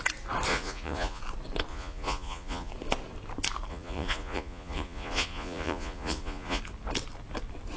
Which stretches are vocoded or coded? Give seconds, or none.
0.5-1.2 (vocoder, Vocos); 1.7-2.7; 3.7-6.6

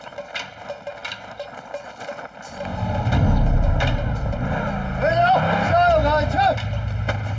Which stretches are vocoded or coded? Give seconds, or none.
none

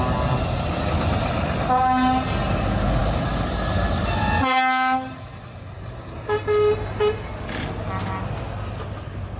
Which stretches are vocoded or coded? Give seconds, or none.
none

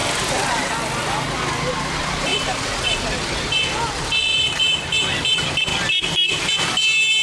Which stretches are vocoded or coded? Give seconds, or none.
0.0-0.7 (vocoder, BigVGAN v2); 2.3-3.0; 5.7-6.4

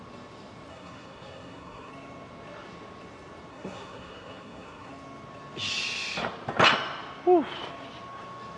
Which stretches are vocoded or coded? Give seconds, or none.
0.7-1.9 (codec, SNAC); 3.5-4.9